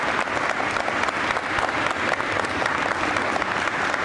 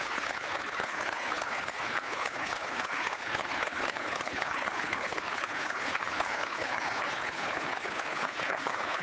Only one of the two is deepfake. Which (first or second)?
second